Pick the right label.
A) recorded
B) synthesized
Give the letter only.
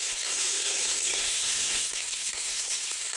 B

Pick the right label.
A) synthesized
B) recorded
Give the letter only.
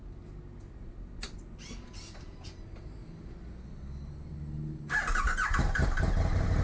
B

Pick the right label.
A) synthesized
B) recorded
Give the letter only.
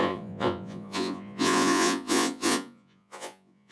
A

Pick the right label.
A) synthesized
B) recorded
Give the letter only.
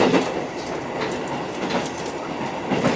B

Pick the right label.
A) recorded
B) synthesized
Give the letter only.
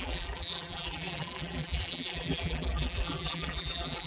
B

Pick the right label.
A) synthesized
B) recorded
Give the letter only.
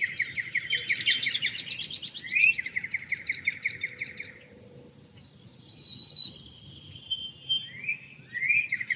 B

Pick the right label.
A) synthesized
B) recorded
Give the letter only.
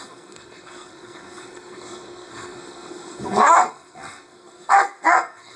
A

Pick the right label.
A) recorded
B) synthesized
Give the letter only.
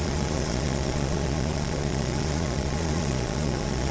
B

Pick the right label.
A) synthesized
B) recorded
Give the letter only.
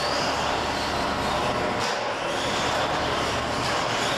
B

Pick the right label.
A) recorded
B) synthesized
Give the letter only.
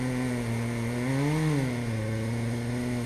A